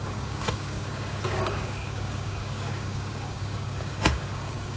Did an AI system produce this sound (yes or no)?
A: yes